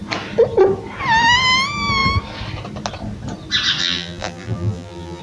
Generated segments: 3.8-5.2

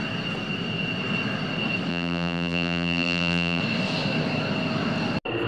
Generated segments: 1.9-3.6

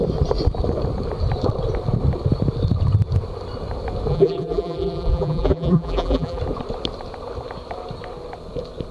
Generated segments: 4.1-6.4

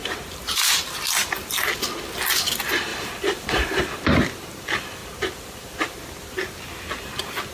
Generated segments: 0.0-0.8; 2.9-3.8; 5.0-6.0